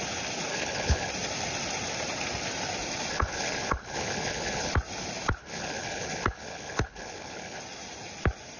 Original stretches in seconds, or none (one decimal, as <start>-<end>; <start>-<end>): 0.0-0.5; 1.1-3.1; 4.7-5.4; 7.6-8.6